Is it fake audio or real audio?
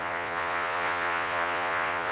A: fake